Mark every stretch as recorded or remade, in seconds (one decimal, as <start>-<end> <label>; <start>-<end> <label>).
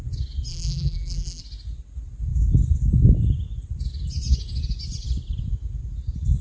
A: 0.0-0.5 recorded; 0.5-1.4 remade; 1.4-6.4 recorded